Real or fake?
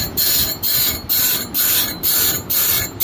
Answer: real